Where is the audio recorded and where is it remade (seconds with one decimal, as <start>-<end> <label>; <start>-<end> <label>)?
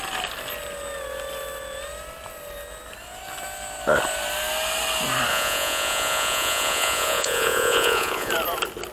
0.0-5.3 recorded; 5.3-8.3 remade; 8.3-8.9 recorded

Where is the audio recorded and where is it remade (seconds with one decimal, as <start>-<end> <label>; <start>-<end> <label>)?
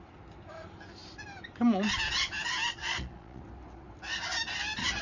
0.0-2.7 recorded; 2.7-3.4 remade; 3.4-5.0 recorded